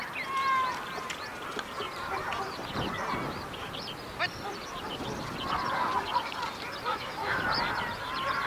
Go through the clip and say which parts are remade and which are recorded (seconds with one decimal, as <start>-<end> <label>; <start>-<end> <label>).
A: 0.0-6.9 recorded; 6.9-7.4 remade; 7.4-8.5 recorded